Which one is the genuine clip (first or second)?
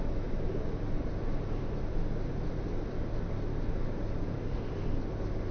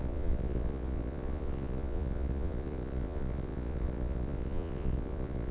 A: first